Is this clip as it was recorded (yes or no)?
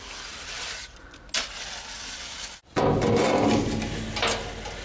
yes